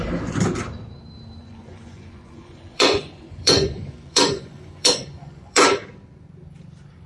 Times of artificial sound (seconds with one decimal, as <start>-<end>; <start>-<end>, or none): 1.4-5.7